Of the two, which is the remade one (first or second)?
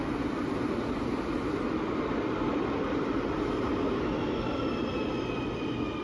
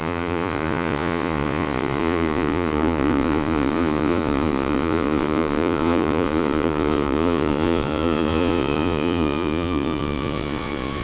second